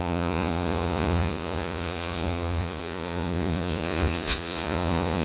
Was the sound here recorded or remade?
remade